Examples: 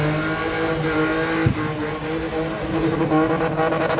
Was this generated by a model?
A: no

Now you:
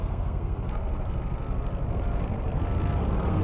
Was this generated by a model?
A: yes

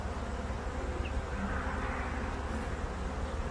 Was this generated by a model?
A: no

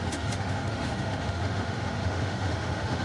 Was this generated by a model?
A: yes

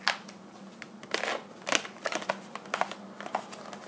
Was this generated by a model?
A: no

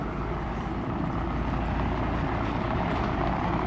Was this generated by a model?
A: no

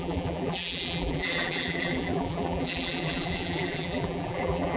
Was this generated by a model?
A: yes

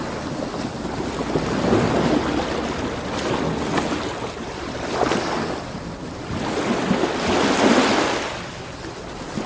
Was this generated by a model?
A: no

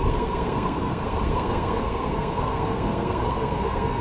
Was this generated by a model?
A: yes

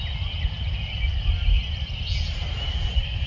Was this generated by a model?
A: no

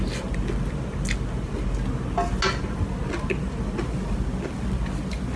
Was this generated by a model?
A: no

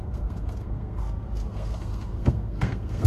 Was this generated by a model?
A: yes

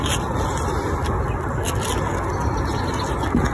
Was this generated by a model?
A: no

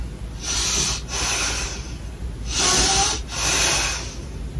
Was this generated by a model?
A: no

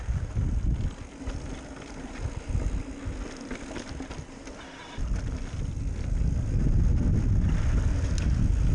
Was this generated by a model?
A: no